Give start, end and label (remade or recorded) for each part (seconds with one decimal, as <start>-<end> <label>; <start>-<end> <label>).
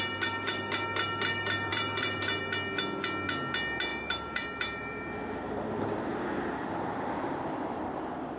0.0-3.9 recorded; 3.9-5.1 remade; 5.1-8.4 recorded